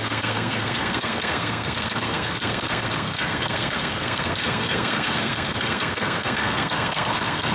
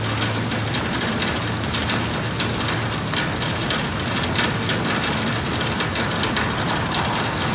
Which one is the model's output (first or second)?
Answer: first